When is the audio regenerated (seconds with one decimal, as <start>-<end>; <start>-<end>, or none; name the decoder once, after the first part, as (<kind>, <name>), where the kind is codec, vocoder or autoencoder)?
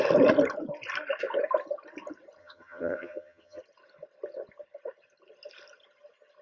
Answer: 2.4-3.6 (vocoder, HiFi-GAN)